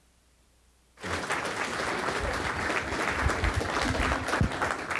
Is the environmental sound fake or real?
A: real